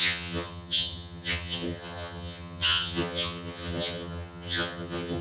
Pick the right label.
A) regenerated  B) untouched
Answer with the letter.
A